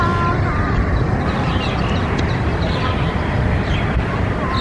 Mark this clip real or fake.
fake